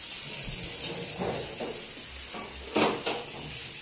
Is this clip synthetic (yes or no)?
no